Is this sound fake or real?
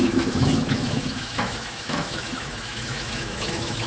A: fake